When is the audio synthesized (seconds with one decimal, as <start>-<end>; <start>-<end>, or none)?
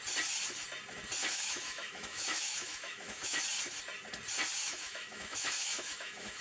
1.2-3.4; 4.6-6.4